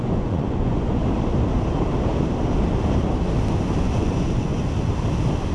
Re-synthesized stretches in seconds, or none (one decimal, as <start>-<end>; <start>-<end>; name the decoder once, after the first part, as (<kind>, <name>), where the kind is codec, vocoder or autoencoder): 0.0-1.0 (vocoder, Vocos); 3.8-4.5